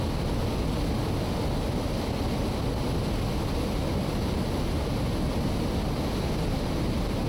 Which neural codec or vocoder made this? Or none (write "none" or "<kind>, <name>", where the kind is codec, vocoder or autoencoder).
none